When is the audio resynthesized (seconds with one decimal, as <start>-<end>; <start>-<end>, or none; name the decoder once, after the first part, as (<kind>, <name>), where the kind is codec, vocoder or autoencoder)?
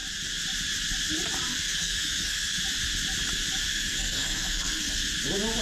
1.5-2.6 (codec, SNAC); 3.7-5.1